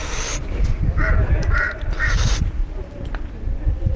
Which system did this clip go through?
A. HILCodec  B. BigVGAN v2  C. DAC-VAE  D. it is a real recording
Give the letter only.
D